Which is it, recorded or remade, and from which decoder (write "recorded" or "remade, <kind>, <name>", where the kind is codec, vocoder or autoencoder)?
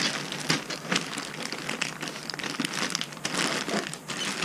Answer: recorded